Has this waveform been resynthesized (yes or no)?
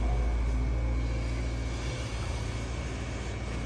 no